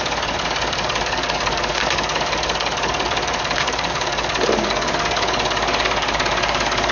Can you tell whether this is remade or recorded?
remade